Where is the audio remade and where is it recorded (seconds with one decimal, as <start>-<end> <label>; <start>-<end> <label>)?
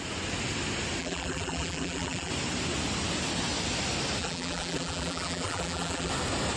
0.0-1.0 recorded; 1.0-2.3 remade; 2.3-4.2 recorded; 4.2-6.1 remade; 6.1-6.6 recorded